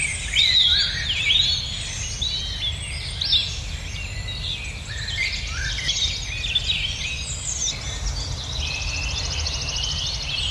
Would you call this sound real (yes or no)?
yes